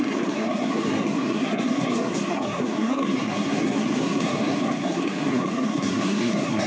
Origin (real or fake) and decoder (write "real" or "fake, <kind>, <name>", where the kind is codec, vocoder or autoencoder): fake, codec, SNAC